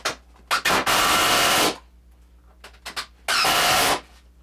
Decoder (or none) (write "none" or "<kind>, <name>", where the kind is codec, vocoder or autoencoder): none